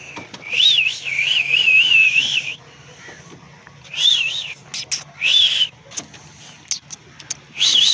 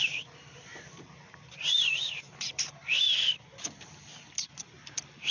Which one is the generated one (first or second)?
second